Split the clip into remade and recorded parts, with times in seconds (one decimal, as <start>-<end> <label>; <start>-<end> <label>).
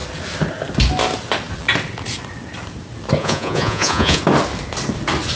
0.0-3.2 recorded; 3.2-4.2 remade; 4.2-5.4 recorded